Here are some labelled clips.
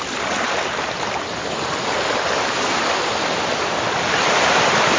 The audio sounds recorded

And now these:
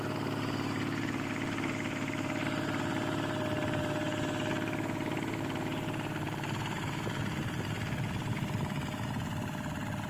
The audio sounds recorded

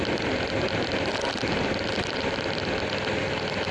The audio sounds recorded